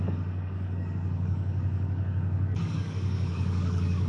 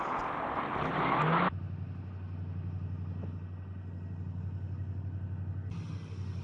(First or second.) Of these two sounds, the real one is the second